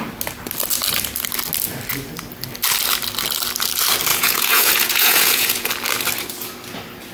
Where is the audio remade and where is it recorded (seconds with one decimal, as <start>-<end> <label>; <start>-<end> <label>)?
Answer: 0.0-4.1 recorded; 4.1-5.7 remade; 5.7-7.1 recorded